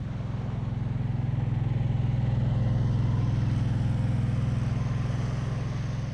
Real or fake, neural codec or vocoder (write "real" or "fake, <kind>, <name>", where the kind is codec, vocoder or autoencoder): real